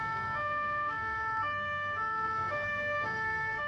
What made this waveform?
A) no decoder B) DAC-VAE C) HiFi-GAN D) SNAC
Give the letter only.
D